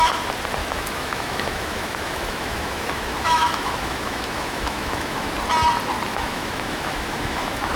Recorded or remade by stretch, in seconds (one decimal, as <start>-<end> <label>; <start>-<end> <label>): 0.0-0.6 recorded; 0.6-5.3 remade; 5.3-6.1 recorded; 6.1-7.8 remade